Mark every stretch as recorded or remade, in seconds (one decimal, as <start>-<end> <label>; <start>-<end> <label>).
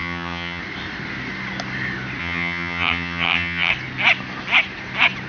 0.0-0.6 remade; 0.6-2.2 recorded; 2.2-3.7 remade; 3.7-5.3 recorded